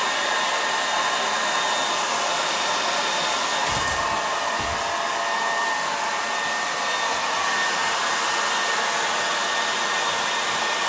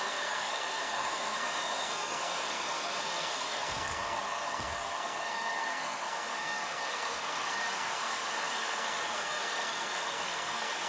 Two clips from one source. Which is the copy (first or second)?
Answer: second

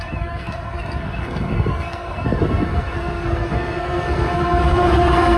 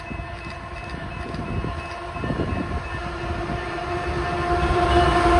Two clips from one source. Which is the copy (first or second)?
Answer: first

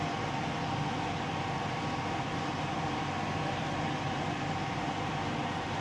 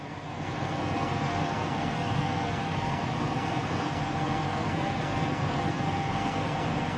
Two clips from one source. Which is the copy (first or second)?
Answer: second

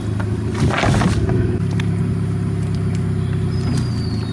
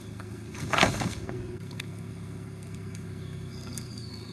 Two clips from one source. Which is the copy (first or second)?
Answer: second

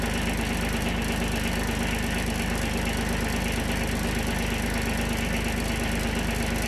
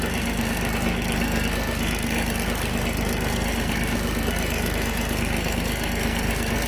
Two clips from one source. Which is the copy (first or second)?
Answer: second